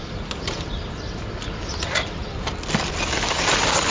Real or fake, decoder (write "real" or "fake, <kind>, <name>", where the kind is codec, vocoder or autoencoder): real